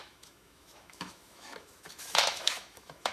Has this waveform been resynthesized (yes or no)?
yes